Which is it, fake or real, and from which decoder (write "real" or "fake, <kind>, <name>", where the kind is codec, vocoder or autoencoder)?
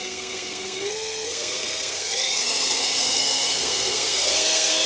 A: fake, codec, SNAC